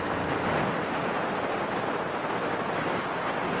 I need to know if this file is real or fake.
real